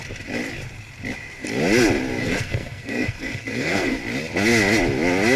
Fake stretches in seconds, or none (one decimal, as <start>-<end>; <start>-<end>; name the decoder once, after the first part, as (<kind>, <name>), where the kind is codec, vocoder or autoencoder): 2.2-4.0 (codec, SNAC)